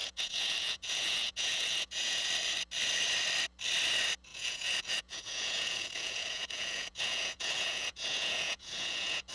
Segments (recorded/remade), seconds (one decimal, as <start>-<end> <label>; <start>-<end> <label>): 0.0-2.3 remade; 2.3-4.3 recorded; 4.3-9.3 remade